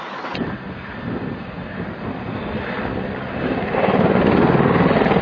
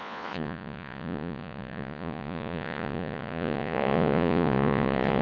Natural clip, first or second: first